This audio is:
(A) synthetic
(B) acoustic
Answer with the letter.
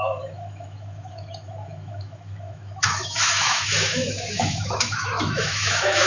A